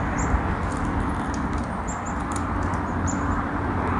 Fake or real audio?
real